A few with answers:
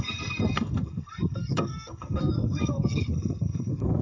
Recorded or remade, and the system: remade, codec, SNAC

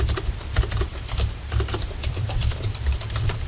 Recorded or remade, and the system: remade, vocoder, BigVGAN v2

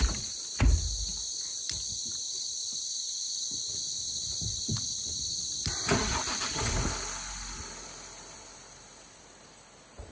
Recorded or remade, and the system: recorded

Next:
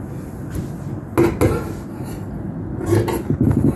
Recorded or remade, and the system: recorded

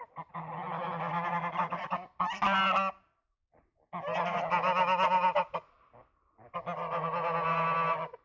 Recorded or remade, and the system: recorded